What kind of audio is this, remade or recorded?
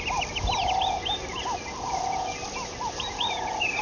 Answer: recorded